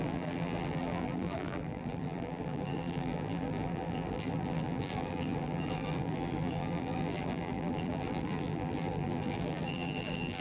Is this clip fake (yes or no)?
yes